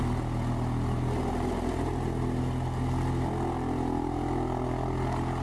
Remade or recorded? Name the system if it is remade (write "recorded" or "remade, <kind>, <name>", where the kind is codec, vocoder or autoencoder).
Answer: recorded